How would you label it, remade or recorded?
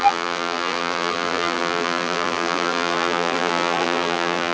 remade